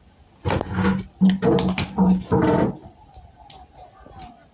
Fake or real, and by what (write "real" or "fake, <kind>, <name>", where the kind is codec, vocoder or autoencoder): real